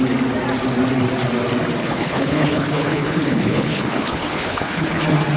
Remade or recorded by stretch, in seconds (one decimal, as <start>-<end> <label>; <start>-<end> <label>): 0.0-1.8 recorded; 1.8-5.0 remade; 5.0-5.4 recorded